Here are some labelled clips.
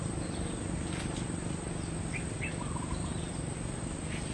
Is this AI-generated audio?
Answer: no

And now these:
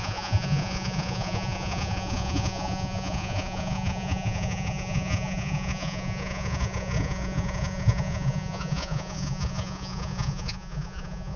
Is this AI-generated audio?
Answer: yes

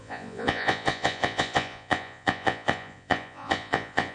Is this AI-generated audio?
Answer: yes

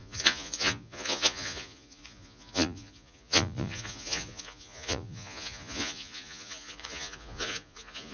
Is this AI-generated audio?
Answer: yes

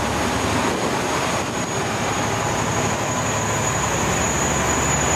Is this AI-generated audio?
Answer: no